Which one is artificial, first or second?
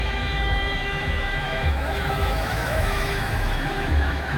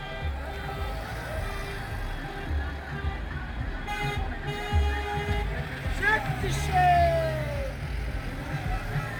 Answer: first